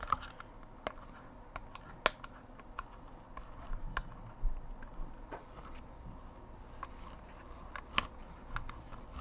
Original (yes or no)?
yes